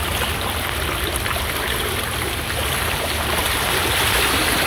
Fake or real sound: real